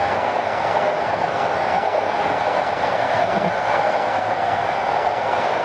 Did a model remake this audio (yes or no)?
yes